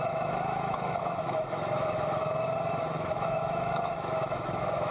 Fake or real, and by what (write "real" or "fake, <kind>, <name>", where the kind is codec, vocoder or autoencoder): fake, autoencoder, DAC-VAE